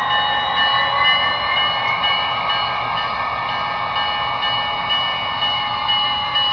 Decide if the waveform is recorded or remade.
recorded